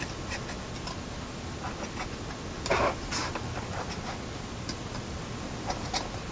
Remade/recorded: recorded